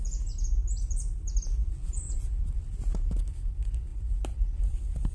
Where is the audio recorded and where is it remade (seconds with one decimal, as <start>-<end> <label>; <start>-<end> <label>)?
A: 0.0-1.8 recorded; 1.8-2.4 remade; 2.4-5.1 recorded